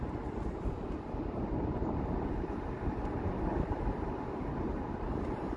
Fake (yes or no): no